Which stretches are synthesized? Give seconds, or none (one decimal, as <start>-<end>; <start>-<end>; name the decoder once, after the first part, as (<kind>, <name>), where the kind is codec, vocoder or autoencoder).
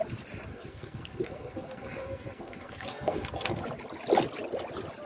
0.5-3.6 (codec, SNAC)